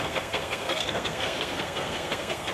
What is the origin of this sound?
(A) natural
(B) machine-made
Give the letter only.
B